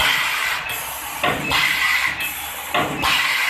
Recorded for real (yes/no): yes